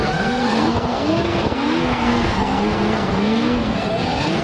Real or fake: fake